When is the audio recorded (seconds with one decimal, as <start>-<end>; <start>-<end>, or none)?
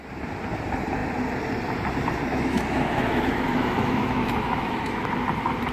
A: 0.0-2.3; 5.0-5.7